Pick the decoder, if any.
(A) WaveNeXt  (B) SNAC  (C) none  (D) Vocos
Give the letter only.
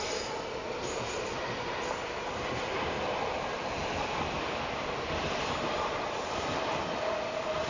C